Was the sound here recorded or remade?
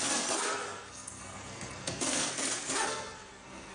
remade